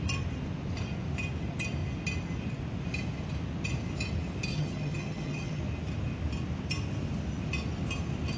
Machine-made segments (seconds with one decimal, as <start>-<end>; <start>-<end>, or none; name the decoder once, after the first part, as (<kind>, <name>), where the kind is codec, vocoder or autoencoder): 4.5-5.6 (vocoder, HiFi-GAN)